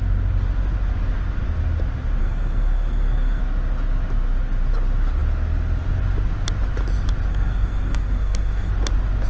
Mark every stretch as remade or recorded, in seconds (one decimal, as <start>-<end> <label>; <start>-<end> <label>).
0.0-2.2 recorded; 2.2-3.4 remade; 3.4-7.3 recorded; 7.3-8.7 remade; 8.7-9.3 recorded